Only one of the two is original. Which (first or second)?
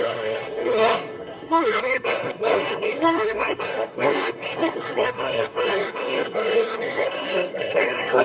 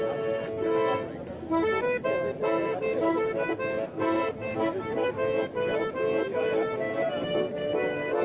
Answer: second